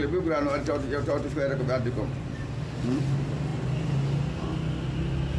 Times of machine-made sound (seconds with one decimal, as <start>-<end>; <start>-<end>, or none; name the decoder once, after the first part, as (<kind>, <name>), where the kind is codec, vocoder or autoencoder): none